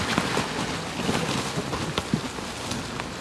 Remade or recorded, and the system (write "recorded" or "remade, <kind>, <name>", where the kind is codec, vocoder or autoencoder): recorded